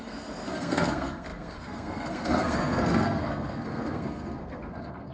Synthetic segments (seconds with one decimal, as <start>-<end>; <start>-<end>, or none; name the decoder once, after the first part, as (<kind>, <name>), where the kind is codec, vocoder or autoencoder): 0.0-5.1 (codec, SNAC)